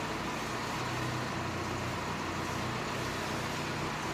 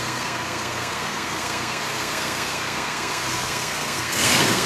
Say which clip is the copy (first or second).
second